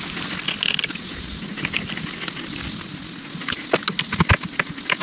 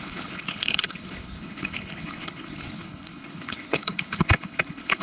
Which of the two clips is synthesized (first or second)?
second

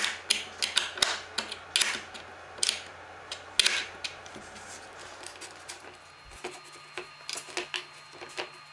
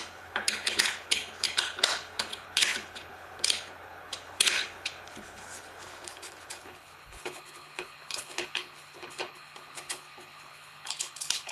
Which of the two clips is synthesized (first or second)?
second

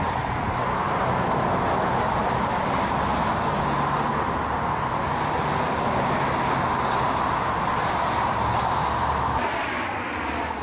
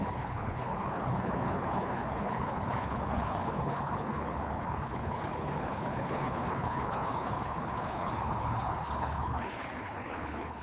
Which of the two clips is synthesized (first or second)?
second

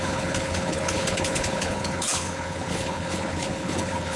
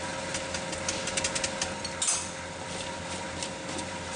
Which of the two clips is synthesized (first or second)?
first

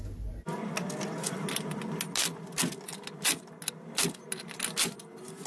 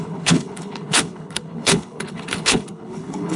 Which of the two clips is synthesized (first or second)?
second